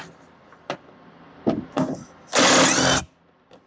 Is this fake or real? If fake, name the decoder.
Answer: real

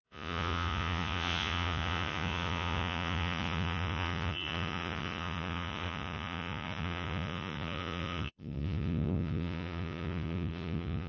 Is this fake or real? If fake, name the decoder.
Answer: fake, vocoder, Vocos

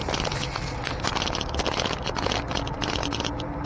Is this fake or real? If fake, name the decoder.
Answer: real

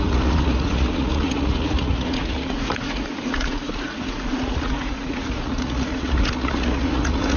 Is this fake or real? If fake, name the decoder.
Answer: fake, vocoder, Vocos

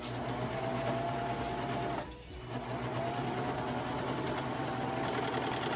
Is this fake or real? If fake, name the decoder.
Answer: real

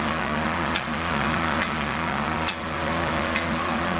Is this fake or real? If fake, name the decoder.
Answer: fake, vocoder, Vocos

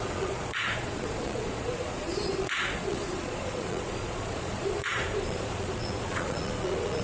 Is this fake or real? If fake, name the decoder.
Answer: fake, vocoder, Vocos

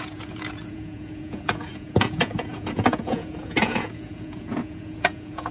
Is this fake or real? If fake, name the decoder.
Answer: fake, vocoder, Vocos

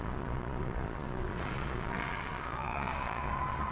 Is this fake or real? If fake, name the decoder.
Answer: fake, vocoder, Vocos